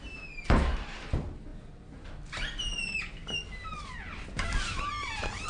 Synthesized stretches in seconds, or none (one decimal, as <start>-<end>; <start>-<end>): none